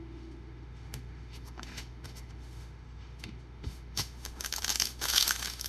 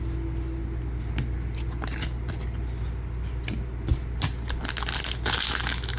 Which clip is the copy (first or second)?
first